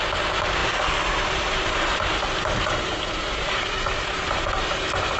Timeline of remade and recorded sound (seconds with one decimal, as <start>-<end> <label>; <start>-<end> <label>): 0.0-5.2 recorded